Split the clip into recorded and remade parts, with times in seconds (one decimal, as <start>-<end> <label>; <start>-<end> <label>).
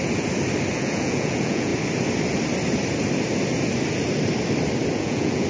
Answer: 0.0-0.7 recorded; 0.7-1.7 remade; 1.7-5.0 recorded; 5.0-5.5 remade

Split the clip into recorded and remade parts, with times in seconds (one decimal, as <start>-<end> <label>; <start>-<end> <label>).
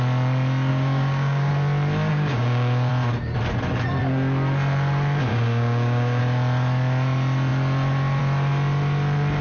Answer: 0.0-0.7 recorded; 0.7-1.5 remade; 1.5-2.1 recorded; 2.1-2.9 remade; 2.9-5.3 recorded; 5.3-6.2 remade; 6.2-9.4 recorded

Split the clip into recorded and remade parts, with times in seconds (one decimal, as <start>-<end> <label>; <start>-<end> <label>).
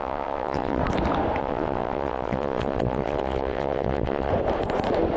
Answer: 0.0-0.8 remade; 0.8-1.4 recorded; 1.4-4.3 remade; 4.3-5.2 recorded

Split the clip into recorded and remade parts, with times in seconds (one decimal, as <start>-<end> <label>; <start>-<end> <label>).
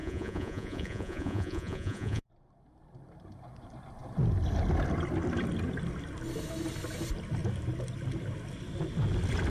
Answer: 0.0-2.3 remade; 2.3-9.5 recorded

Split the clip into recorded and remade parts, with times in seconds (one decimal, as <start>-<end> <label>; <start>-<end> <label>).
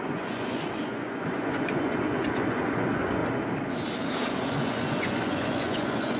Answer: 0.0-3.2 remade; 3.2-4.3 recorded; 4.3-6.2 remade